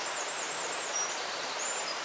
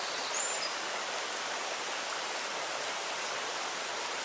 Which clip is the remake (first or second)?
first